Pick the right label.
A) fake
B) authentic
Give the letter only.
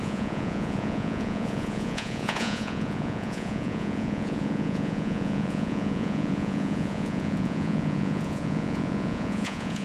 A